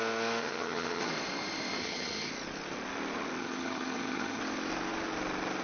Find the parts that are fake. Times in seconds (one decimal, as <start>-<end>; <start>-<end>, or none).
0.4-1.1; 1.8-2.3; 3.4-4.4